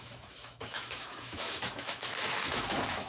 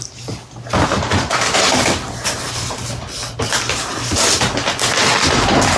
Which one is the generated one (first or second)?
first